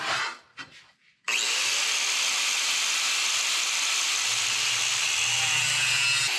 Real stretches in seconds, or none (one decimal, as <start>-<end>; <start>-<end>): 0.0-6.4

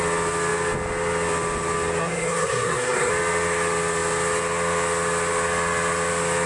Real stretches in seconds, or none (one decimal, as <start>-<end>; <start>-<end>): 0.0-2.0; 3.1-6.5

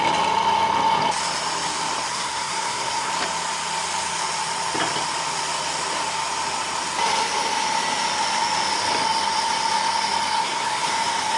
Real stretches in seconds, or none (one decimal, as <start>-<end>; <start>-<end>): 0.0-2.1; 3.1-10.4; 10.9-11.4